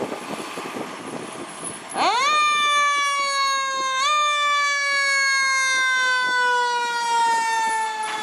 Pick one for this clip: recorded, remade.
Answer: recorded